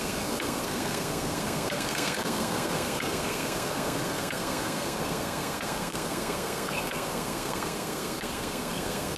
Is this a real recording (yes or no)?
no